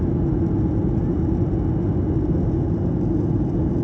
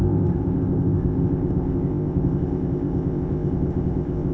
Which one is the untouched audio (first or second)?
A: first